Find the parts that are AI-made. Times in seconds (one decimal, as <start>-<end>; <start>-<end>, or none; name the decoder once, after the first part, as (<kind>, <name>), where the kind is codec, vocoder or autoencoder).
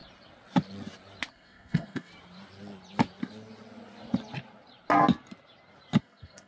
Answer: 1.3-2.1 (codec, SNAC); 6.0-6.5